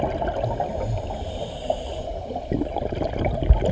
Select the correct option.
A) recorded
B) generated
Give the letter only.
A